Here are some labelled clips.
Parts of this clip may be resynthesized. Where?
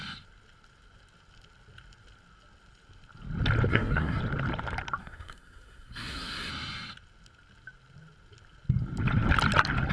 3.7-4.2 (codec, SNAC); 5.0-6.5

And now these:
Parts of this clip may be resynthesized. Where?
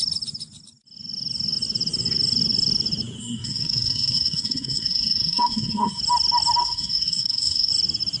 3.2-6.0 (codec, SNAC); 6.6-7.7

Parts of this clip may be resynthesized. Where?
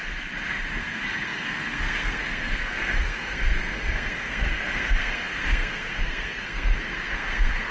0.8-7.7 (codec, SNAC)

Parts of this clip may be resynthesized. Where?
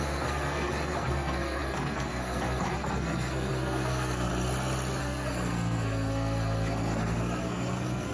0.0-4.3 (codec, SNAC); 5.0-8.1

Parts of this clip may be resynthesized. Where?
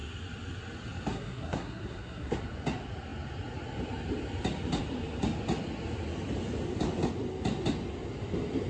1.1-2.4 (codec, SNAC)